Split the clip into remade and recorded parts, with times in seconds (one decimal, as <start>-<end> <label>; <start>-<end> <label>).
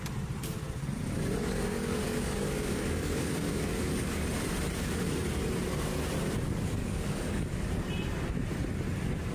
0.0-1.4 recorded; 1.4-4.2 remade; 4.2-6.8 recorded; 6.8-7.7 remade; 7.7-9.3 recorded